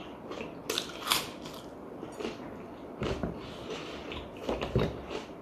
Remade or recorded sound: recorded